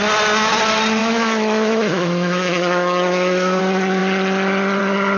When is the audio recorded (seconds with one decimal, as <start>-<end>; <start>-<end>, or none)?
0.0-1.0; 3.6-5.2